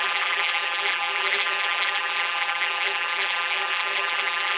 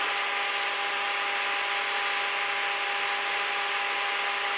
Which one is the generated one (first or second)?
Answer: first